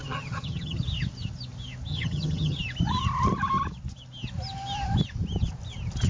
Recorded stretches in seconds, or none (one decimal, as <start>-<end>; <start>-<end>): 0.8-1.9; 2.6-6.1